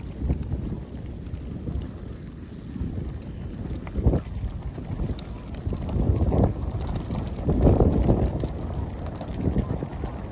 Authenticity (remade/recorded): recorded